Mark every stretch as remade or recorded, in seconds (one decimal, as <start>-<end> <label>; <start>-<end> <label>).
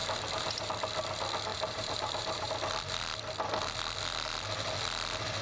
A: 0.0-0.7 remade; 0.7-1.5 recorded; 1.5-2.5 remade; 2.5-5.4 recorded